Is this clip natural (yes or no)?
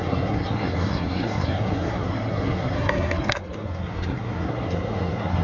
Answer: no